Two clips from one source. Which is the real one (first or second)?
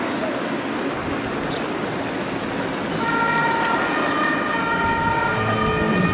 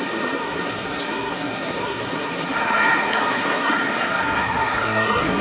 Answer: first